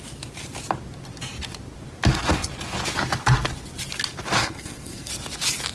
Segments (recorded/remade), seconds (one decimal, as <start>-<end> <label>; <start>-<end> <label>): 0.0-4.4 recorded; 4.4-5.1 remade; 5.1-5.7 recorded